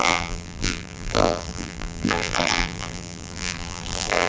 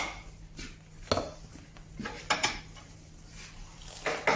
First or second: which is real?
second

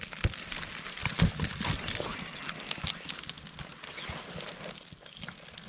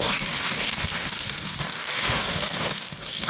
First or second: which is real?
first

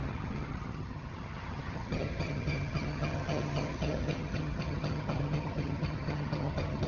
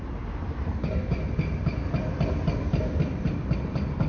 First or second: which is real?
second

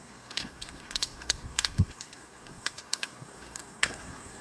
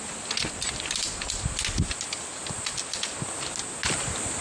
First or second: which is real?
second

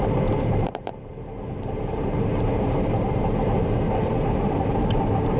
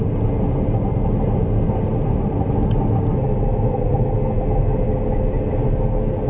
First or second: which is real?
second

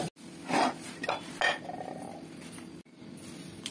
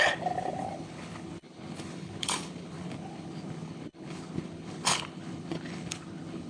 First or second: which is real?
first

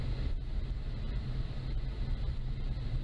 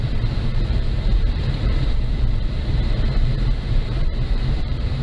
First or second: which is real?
first